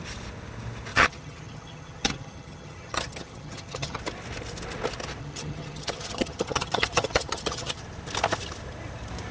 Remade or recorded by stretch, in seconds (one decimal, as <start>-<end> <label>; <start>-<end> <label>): 0.0-0.9 recorded; 0.9-4.0 remade; 4.0-5.2 recorded; 5.2-7.8 remade; 7.8-9.3 recorded